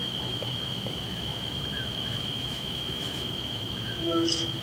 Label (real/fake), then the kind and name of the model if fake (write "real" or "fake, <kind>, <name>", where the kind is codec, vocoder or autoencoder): fake, autoencoder, DAC-VAE